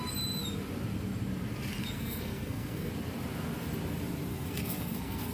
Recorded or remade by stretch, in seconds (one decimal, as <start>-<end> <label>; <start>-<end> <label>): 0.0-1.8 recorded; 1.8-2.9 remade; 2.9-4.3 recorded; 4.3-5.3 remade